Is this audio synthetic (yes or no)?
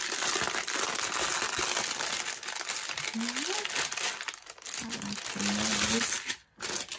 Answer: no